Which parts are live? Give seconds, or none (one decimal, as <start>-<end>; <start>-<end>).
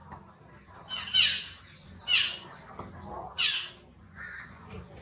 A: 0.0-2.0; 2.6-4.0